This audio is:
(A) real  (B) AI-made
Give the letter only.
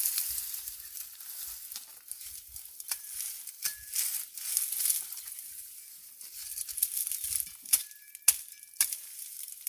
A